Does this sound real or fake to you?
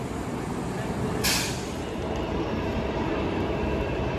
real